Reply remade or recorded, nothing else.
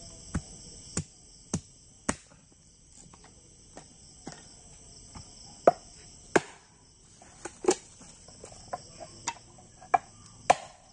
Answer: recorded